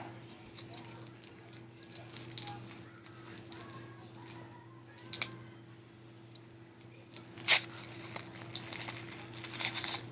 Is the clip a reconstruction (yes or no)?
no